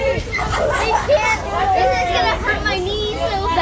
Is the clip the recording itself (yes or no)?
yes